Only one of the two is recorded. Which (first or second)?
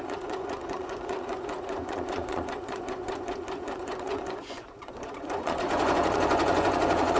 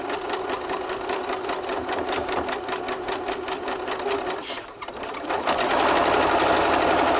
second